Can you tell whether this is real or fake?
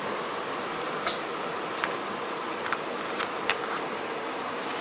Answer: real